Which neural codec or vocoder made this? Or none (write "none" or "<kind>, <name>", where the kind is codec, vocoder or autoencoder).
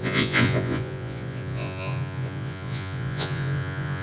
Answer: vocoder, Vocos